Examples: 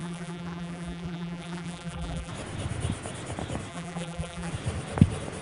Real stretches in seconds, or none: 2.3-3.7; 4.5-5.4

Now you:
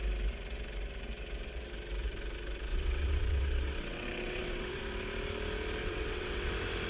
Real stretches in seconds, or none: 0.0-2.7; 4.8-5.8; 6.5-6.9

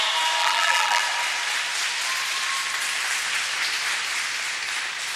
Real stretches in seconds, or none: 0.0-0.4; 1.0-5.2

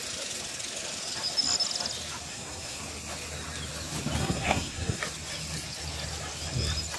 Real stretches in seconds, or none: 0.0-2.3; 2.8-4.2; 5.0-7.0

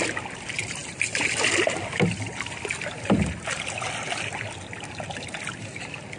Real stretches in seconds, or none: 0.0-6.2